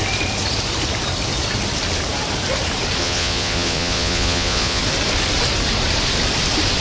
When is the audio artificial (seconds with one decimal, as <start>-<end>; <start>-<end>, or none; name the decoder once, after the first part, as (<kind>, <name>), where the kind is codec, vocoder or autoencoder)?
3.0-4.8 (vocoder, Vocos)